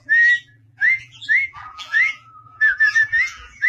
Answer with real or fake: fake